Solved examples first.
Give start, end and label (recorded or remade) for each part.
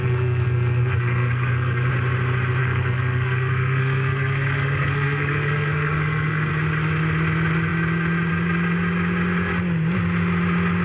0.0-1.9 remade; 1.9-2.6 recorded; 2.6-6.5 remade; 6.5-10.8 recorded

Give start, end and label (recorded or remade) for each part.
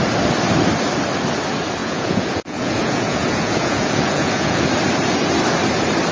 0.0-1.8 recorded; 1.8-4.6 remade; 4.6-6.1 recorded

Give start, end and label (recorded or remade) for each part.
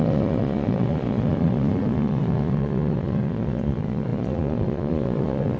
0.0-5.6 remade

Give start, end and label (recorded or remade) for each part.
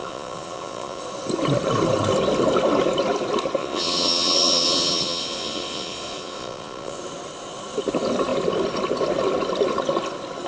0.0-1.0 remade; 1.0-3.6 recorded; 3.6-7.0 remade; 7.0-10.5 recorded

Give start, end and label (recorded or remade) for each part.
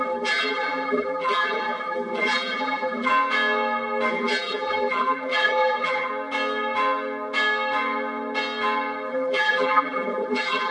0.0-3.1 remade; 3.1-4.1 recorded; 4.1-6.1 remade; 6.1-9.1 recorded; 9.1-10.7 remade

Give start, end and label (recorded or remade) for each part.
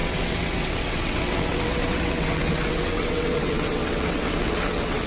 0.0-5.1 remade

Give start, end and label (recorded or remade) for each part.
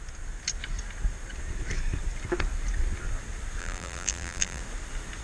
0.0-3.6 recorded; 3.6-4.6 remade; 4.6-5.2 recorded